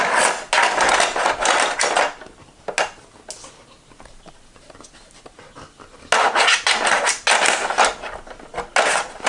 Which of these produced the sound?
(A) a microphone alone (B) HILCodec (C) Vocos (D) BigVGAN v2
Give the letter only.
A